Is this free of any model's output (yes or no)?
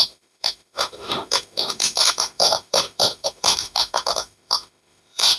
no